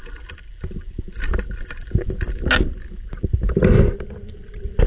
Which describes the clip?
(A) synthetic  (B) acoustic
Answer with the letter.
B